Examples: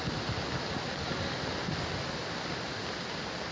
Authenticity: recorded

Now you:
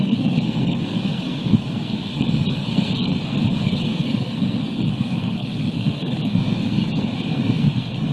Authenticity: remade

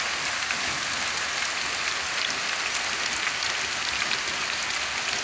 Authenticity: recorded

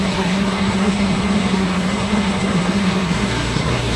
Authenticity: remade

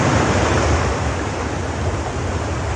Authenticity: recorded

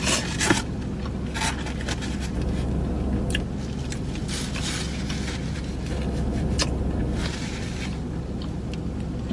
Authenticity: recorded